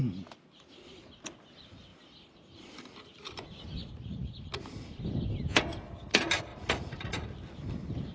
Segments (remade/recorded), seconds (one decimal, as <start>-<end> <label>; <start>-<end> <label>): 0.0-3.8 recorded; 3.8-4.3 remade; 4.3-6.5 recorded; 6.5-7.4 remade; 7.4-8.1 recorded